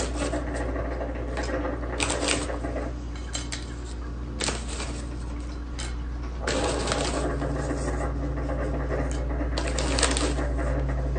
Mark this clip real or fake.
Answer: real